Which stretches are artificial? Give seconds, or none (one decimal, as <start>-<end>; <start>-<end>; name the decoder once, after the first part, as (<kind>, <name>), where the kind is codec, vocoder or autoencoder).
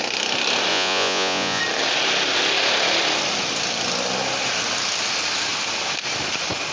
0.7-1.6 (vocoder, Vocos)